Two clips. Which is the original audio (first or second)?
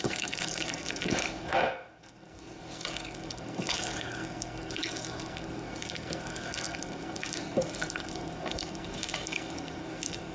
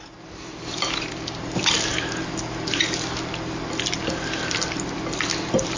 second